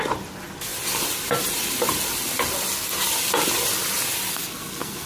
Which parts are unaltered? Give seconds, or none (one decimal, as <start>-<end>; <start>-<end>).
0.0-4.3